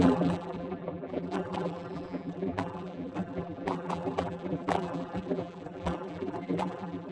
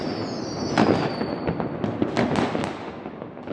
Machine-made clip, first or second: first